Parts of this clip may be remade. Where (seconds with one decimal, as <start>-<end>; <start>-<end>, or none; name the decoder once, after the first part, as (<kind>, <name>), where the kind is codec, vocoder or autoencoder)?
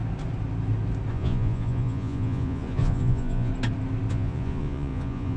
1.1-3.5 (vocoder, Vocos); 4.1-5.4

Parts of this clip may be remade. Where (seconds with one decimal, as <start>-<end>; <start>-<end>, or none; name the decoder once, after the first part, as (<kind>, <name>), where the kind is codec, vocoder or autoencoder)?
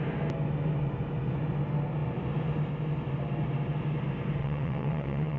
4.4-5.4 (vocoder, WaveNeXt)